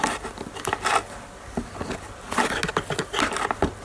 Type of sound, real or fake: real